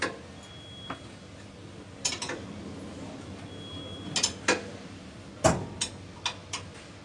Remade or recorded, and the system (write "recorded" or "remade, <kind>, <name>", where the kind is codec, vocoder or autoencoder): recorded